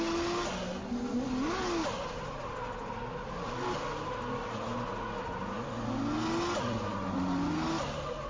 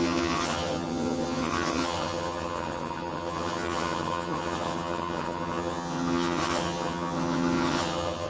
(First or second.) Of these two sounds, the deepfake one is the second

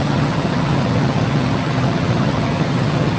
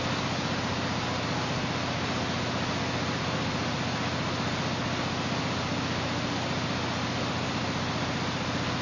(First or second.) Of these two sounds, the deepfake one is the first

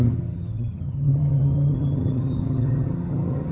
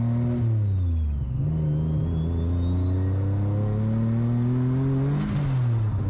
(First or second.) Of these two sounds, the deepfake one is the first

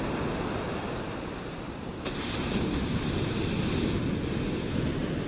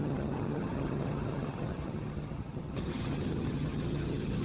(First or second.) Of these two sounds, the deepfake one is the second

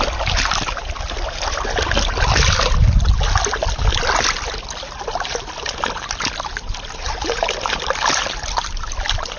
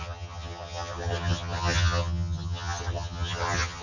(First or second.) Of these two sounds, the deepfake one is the second